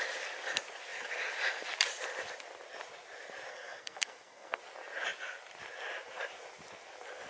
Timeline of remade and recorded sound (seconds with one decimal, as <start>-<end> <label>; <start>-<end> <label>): 0.0-3.5 recorded; 3.5-4.6 remade; 4.6-7.3 recorded